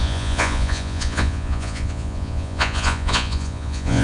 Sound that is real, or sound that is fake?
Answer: fake